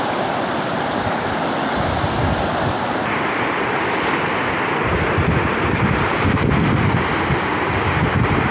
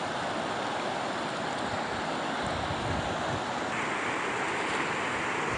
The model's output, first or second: first